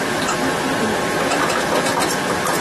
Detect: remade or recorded recorded